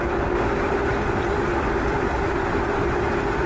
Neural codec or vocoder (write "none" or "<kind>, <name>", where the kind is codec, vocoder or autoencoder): vocoder, BigVGAN v2